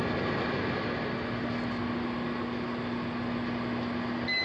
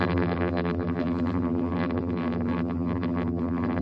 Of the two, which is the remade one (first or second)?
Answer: second